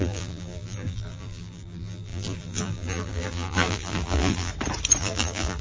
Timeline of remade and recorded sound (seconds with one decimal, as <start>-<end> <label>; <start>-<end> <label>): 0.0-4.5 remade; 4.5-5.0 recorded; 5.0-5.6 remade